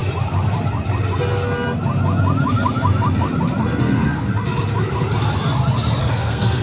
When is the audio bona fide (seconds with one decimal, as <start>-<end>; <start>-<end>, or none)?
0.0-3.8; 4.3-6.0